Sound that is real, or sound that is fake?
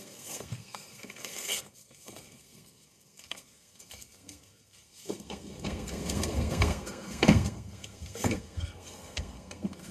fake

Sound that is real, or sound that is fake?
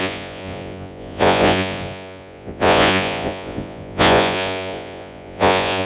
fake